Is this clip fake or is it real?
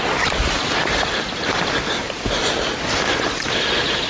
real